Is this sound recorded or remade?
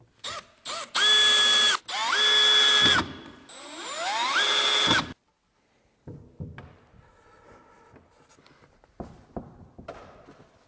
recorded